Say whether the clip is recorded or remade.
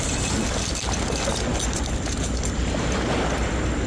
recorded